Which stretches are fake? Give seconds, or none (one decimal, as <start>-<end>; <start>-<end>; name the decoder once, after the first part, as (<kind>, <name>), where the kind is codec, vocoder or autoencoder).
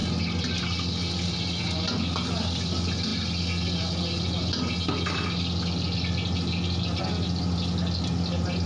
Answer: none